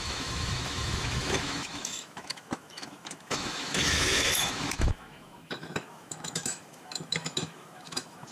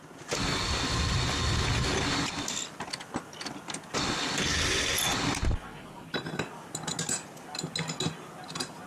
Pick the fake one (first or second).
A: first